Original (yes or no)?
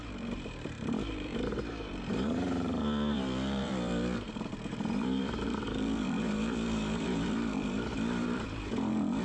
no